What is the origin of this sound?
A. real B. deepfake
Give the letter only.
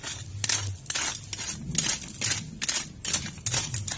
A